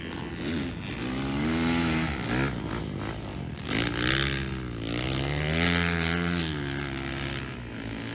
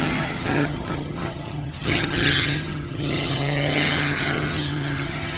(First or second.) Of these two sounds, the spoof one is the second